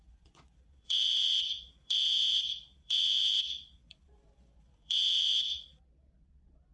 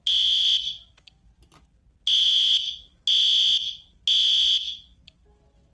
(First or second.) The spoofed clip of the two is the first